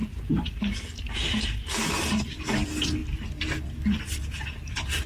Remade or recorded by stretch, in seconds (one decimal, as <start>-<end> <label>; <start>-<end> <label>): 0.0-5.1 remade